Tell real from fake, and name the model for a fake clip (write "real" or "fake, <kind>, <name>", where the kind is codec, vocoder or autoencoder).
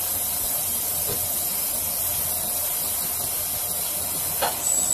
real